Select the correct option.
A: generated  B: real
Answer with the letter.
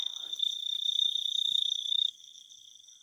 A